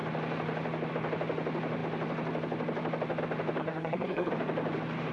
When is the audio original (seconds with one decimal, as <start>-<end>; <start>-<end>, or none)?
0.0-3.6; 4.3-5.1